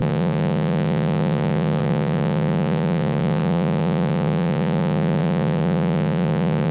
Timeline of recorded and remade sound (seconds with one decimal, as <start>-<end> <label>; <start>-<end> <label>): 0.0-6.7 remade